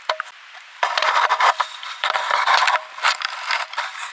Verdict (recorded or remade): remade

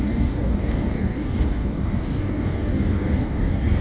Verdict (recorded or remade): remade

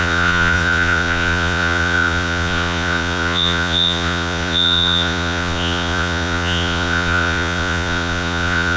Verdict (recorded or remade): remade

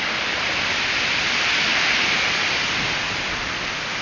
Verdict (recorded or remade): recorded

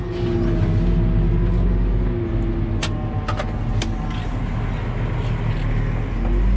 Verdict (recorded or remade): recorded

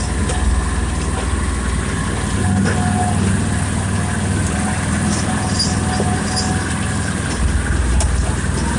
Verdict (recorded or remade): recorded